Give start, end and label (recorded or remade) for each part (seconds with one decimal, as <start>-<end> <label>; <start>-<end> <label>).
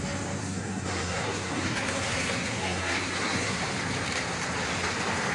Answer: 0.0-0.4 recorded; 0.4-3.6 remade; 3.6-5.3 recorded